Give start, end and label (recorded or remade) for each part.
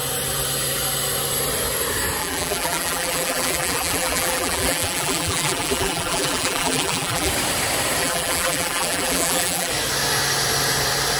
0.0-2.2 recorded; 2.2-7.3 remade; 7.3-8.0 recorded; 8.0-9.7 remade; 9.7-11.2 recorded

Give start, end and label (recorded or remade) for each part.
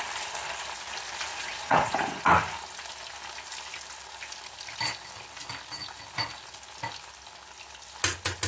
0.0-1.3 recorded; 1.3-2.2 remade; 2.2-8.5 recorded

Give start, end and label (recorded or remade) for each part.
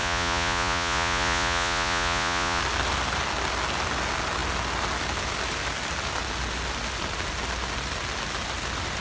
0.0-2.6 remade; 2.6-9.0 recorded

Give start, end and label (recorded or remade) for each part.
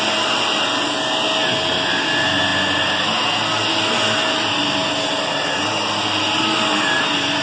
0.0-7.4 recorded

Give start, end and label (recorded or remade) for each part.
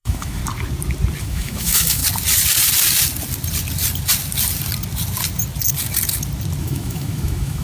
0.0-0.4 remade; 0.4-1.2 recorded; 1.2-2.0 remade; 2.0-6.6 recorded; 6.6-7.6 remade